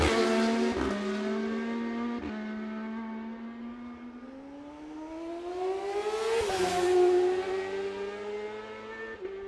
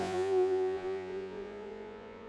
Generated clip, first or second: second